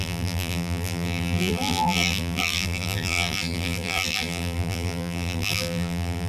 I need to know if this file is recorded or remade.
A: remade